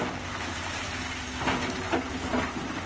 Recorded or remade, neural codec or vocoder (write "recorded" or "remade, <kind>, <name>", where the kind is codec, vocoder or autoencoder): recorded